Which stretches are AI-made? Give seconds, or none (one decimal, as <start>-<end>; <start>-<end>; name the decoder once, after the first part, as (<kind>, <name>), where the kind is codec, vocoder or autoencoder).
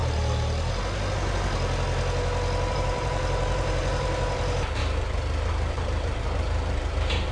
2.7-4.8 (vocoder, BigVGAN v2); 5.5-7.3